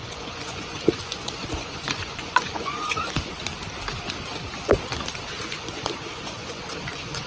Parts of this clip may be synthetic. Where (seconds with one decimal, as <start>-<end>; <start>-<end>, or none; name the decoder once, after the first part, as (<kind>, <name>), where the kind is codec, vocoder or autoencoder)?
0.0-3.3 (vocoder, Vocos); 5.4-7.3